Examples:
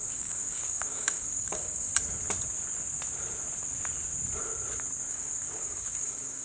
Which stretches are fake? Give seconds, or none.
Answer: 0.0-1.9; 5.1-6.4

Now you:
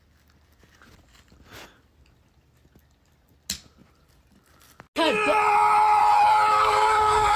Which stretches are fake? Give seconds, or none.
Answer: 6.5-7.4

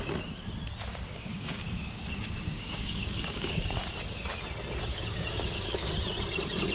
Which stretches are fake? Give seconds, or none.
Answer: 0.9-3.8; 4.9-5.9

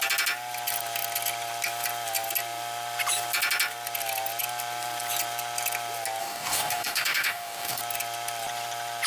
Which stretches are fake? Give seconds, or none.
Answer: 6.2-7.8